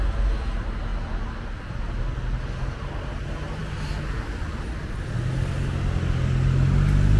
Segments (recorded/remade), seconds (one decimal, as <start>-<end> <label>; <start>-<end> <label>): 0.0-7.2 recorded